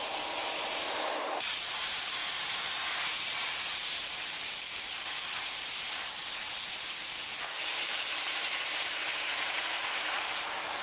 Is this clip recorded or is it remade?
remade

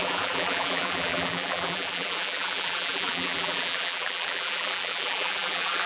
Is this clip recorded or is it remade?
remade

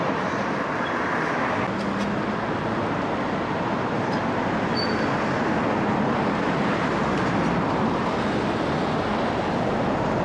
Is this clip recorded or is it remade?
recorded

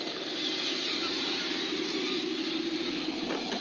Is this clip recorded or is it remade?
recorded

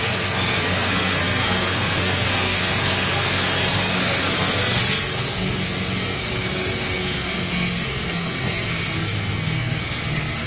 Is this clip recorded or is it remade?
remade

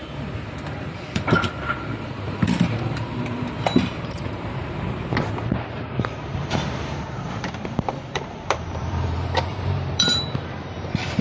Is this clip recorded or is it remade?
remade